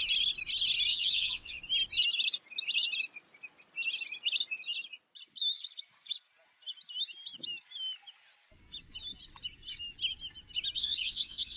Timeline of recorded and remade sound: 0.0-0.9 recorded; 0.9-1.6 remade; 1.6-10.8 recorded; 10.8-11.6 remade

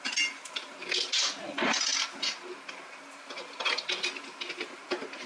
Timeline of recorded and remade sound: 0.0-5.3 recorded